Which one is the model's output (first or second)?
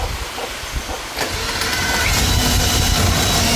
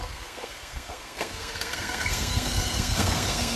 second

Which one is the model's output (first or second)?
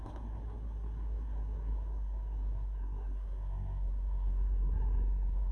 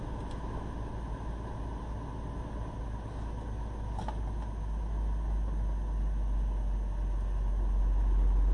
first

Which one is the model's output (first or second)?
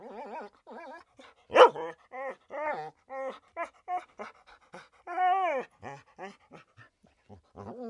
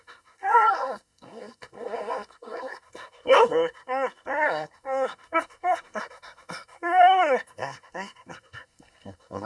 second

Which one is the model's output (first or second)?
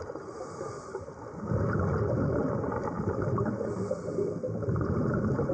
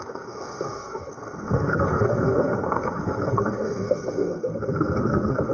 second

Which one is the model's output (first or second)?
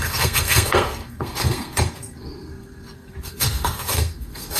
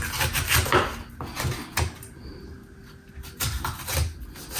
first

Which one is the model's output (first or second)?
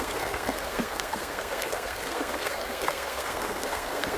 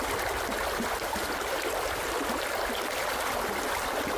first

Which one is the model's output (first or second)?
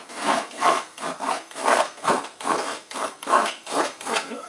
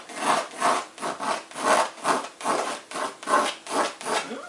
first